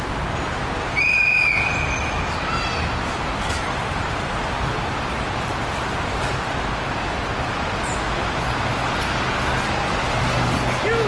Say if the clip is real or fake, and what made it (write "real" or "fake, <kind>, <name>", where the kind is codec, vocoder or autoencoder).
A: real